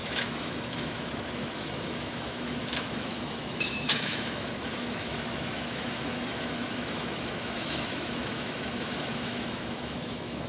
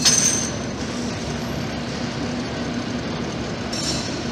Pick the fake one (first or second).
first